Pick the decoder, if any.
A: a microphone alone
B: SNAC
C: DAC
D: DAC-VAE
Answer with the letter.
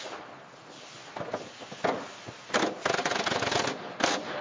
A